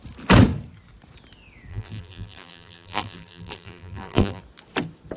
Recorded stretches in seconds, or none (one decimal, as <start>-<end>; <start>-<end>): 0.0-1.7; 4.4-5.2